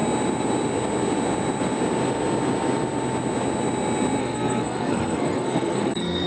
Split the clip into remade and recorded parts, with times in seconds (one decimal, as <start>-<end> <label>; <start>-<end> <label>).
0.0-4.2 recorded; 4.2-6.3 remade